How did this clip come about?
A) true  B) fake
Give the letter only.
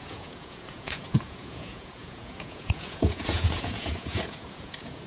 B